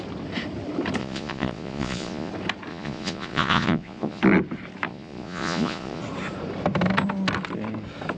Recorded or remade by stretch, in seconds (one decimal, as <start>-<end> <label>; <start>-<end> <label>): 0.0-1.0 recorded; 1.0-2.3 remade; 2.3-2.7 recorded; 2.7-4.2 remade; 4.2-4.9 recorded; 4.9-6.0 remade; 6.0-8.2 recorded